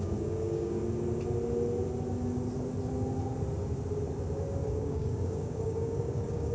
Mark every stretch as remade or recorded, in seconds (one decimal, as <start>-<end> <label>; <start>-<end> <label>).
0.0-0.8 remade; 0.8-4.7 recorded; 4.7-6.5 remade